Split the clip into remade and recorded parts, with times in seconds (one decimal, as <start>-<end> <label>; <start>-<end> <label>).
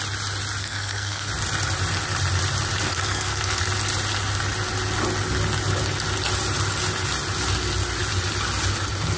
0.0-0.6 recorded; 0.6-1.3 remade; 1.3-2.9 recorded; 2.9-3.6 remade; 3.6-9.2 recorded